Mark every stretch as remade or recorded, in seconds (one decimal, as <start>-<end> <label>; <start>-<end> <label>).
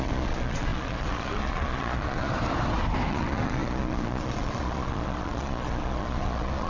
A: 0.0-2.3 remade; 2.3-3.1 recorded; 3.1-6.7 remade